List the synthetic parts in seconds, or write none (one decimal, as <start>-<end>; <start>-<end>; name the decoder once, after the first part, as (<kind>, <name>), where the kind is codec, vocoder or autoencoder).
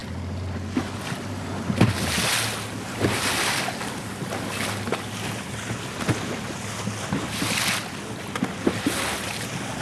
none